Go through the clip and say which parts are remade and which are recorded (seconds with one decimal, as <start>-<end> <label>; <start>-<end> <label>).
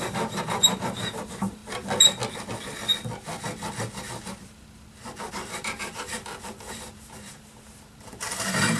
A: 0.0-1.6 remade; 1.6-5.3 recorded; 5.3-8.8 remade